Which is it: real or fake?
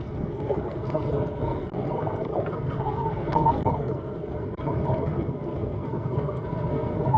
fake